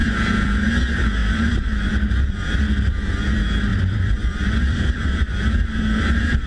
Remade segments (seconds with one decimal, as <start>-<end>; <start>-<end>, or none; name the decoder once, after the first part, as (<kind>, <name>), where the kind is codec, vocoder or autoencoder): 0.0-0.7 (vocoder, BigVGAN v2); 1.2-2.6; 3.7-6.5